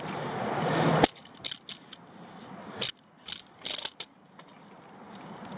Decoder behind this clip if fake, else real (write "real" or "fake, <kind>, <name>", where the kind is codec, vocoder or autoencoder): real